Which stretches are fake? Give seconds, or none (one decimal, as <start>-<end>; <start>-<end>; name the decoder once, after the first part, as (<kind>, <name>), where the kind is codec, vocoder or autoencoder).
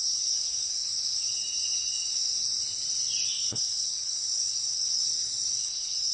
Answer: 0.0-2.3 (codec, HILCodec); 3.3-5.1; 5.6-6.1